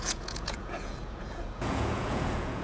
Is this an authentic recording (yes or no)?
no